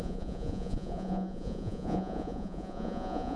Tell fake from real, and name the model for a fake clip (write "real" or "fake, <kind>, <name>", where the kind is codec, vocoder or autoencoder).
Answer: fake, vocoder, Vocos